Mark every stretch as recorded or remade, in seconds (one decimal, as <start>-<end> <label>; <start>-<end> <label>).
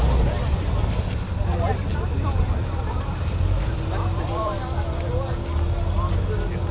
0.0-1.5 recorded; 1.5-4.6 remade; 4.6-6.7 recorded